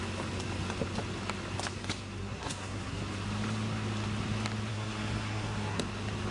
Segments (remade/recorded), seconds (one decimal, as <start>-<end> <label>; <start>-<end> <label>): 0.0-2.2 recorded; 2.2-3.0 remade; 3.0-4.7 recorded; 4.7-5.8 remade; 5.8-6.3 recorded